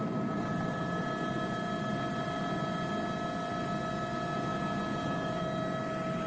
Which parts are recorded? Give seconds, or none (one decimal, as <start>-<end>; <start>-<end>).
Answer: 0.0-6.3